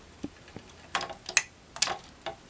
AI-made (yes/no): no